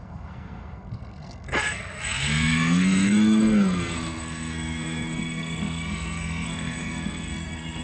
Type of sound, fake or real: fake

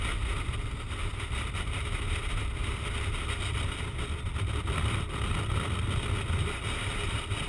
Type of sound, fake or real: real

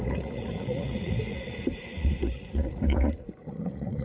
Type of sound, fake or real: fake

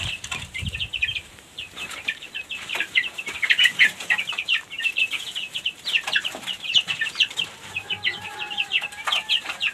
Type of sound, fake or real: fake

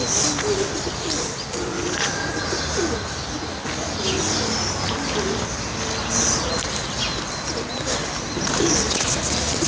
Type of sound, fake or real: real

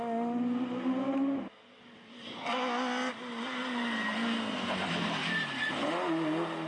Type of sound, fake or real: real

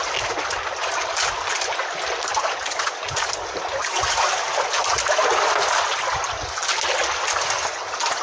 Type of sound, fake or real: real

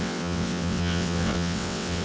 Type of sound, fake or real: fake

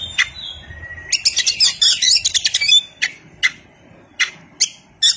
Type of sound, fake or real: real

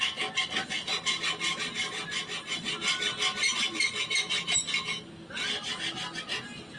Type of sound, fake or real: real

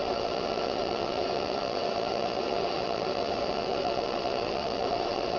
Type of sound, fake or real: fake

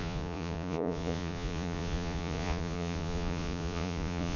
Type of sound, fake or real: fake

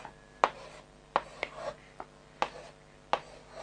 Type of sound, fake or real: real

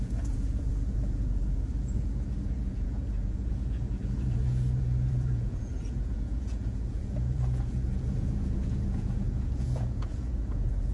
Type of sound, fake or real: fake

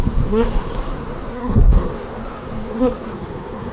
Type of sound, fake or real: fake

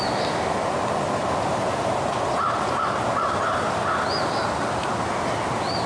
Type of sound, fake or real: real